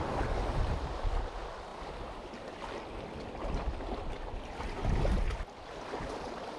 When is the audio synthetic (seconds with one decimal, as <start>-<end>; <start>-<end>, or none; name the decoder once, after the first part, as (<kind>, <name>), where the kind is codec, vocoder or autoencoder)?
none

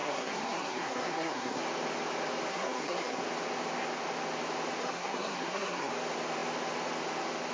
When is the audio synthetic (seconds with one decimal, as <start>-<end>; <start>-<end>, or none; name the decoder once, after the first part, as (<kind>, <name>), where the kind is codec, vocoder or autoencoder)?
0.0-1.6 (codec, SNAC); 2.5-3.2; 4.8-5.9

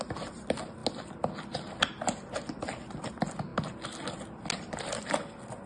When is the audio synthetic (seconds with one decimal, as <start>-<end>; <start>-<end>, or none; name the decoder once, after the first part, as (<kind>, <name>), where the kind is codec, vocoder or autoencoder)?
none

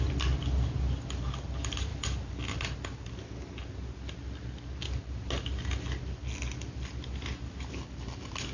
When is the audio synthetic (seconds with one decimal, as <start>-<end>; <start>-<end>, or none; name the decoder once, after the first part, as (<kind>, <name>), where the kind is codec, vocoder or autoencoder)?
none

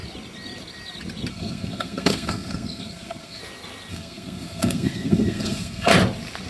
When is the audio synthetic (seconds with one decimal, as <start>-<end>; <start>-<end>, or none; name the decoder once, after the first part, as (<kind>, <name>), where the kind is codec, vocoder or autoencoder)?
1.3-3.4 (codec, SNAC); 3.9-5.9

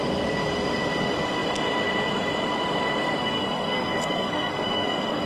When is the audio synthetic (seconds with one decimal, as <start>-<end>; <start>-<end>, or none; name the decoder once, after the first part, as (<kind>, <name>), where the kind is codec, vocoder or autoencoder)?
3.2-5.3 (codec, SNAC)